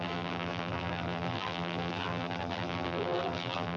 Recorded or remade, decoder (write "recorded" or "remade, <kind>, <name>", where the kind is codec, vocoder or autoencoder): remade, vocoder, BigVGAN v2